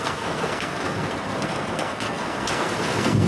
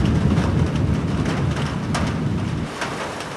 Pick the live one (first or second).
second